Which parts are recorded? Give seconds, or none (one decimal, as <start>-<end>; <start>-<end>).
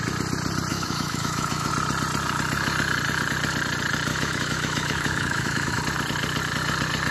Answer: 0.0-0.7; 1.7-4.1; 5.8-7.1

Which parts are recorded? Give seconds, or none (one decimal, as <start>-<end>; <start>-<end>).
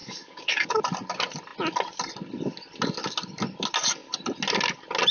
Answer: 0.8-5.1